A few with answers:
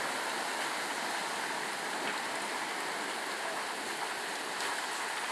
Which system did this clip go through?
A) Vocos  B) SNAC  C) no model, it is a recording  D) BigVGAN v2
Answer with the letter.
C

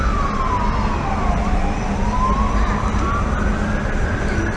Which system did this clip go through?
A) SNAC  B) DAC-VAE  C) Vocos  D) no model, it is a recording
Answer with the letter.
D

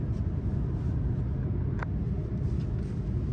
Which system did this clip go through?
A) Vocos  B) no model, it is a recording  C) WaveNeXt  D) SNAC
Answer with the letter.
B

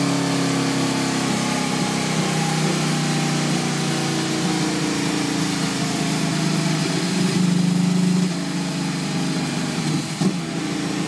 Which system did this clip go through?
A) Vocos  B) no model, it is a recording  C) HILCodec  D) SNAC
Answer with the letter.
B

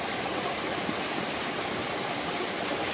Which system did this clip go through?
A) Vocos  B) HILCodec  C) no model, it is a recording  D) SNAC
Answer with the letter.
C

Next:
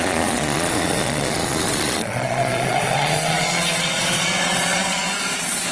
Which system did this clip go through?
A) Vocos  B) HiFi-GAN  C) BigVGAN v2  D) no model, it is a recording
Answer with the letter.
A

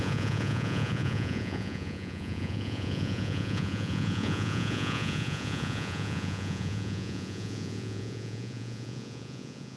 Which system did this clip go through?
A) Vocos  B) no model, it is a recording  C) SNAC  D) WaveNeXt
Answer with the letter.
A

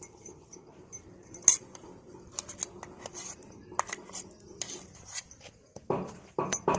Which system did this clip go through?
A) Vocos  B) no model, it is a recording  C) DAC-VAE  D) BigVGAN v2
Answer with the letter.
B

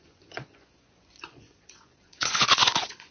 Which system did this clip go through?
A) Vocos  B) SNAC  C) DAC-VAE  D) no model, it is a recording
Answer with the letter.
A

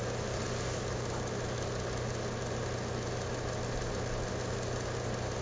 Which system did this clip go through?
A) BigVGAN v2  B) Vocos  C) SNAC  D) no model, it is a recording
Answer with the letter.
D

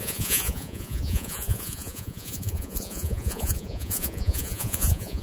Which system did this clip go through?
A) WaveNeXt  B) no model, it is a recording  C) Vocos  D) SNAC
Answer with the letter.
C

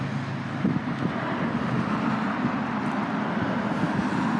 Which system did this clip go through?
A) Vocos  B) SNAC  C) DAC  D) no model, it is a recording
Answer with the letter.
D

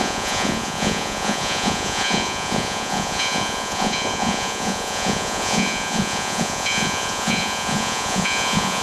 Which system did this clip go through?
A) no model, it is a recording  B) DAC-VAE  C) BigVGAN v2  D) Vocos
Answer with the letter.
D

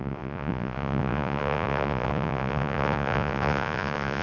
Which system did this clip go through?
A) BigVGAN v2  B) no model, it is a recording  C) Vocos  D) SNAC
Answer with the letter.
C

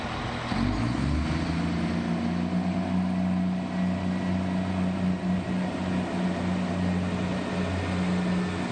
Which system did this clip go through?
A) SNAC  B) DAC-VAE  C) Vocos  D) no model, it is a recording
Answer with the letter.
D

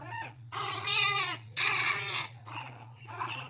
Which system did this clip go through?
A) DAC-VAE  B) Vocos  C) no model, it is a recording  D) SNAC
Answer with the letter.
B